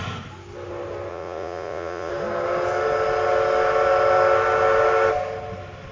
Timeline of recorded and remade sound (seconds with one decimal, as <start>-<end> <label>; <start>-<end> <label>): 0.0-1.1 recorded; 1.1-2.1 remade; 2.1-5.9 recorded